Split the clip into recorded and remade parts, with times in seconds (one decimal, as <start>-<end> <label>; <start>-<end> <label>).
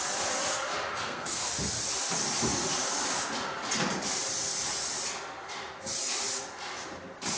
0.0-0.9 recorded; 0.9-1.5 remade; 1.5-7.4 recorded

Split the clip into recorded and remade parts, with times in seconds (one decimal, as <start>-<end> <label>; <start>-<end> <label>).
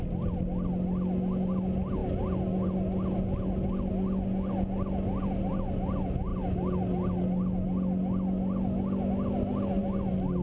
0.0-10.4 recorded